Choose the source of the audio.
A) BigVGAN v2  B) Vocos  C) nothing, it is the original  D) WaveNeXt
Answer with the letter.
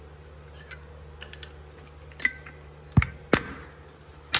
C